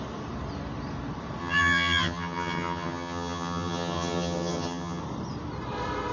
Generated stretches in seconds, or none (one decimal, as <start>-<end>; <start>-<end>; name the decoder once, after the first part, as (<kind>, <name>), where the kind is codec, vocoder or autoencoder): 1.4-5.0 (vocoder, HiFi-GAN)